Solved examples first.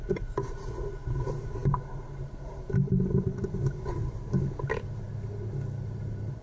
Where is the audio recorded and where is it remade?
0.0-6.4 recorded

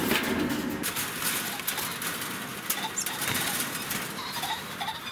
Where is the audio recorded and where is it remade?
0.0-5.1 recorded

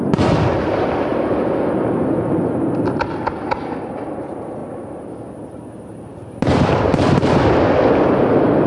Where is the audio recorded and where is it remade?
0.0-6.1 recorded; 6.1-6.9 remade; 6.9-8.7 recorded

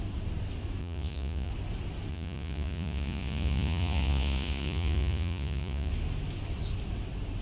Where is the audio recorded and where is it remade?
0.0-0.8 recorded; 0.8-1.5 remade; 1.5-2.1 recorded; 2.1-5.9 remade; 5.9-7.4 recorded

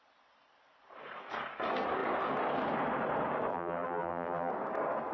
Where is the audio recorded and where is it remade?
0.0-3.5 recorded; 3.5-4.5 remade; 4.5-5.1 recorded

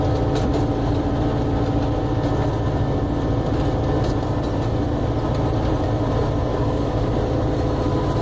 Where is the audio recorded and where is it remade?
0.0-6.5 recorded; 6.5-7.1 remade; 7.1-8.2 recorded

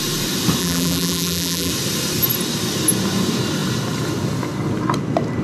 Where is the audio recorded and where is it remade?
0.0-0.6 recorded; 0.6-1.7 remade; 1.7-5.4 recorded

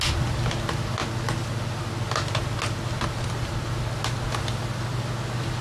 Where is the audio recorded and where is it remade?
0.0-5.6 recorded